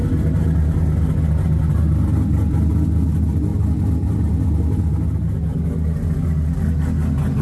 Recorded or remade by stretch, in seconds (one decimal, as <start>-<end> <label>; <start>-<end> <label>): 0.0-7.4 recorded